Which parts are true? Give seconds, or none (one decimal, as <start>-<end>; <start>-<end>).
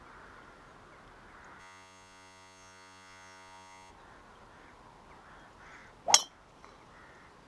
0.0-1.6; 3.9-7.5